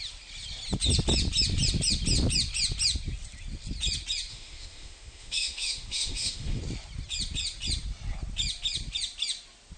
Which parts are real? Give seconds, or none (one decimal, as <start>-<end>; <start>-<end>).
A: 0.0-4.3; 6.6-9.8